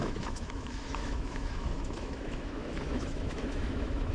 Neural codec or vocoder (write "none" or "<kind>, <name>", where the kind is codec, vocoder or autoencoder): autoencoder, DAC-VAE